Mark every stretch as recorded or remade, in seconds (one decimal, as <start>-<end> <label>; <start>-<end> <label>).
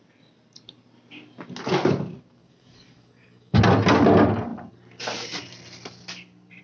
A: 0.0-2.4 recorded; 2.4-3.6 remade; 3.6-6.6 recorded